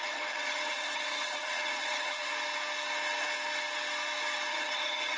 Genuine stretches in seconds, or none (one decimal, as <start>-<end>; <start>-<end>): 2.3-4.5